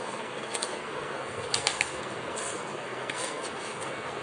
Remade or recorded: remade